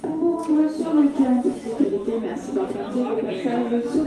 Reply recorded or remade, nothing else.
remade